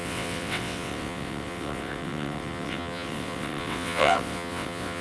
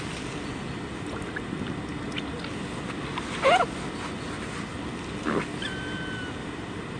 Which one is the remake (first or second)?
first